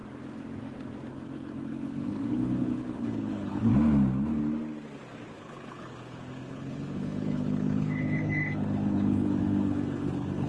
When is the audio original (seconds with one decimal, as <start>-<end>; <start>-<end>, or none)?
0.0-1.1; 3.7-5.3